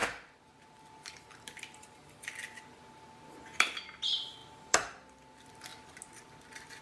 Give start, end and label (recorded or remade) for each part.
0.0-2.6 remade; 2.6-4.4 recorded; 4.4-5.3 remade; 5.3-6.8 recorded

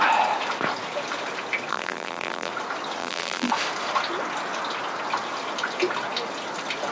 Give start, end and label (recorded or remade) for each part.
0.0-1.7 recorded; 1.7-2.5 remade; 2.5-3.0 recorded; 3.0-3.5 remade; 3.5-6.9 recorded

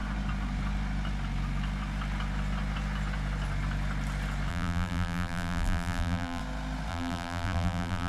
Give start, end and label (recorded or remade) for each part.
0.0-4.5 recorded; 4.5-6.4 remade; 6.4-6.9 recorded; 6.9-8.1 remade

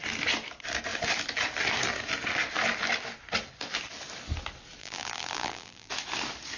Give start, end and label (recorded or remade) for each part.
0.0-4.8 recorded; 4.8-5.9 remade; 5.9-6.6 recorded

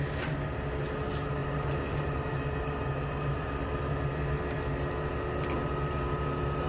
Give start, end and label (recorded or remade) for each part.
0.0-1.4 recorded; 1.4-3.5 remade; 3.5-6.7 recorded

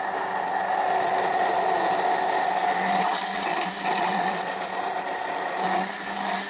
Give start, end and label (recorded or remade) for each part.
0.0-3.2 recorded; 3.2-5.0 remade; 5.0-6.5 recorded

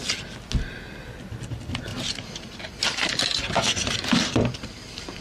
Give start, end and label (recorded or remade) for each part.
0.0-1.9 recorded; 1.9-5.2 remade